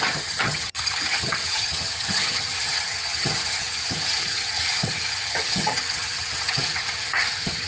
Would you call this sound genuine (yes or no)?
no